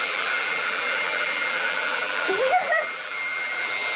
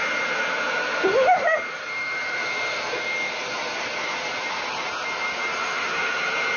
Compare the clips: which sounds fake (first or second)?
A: first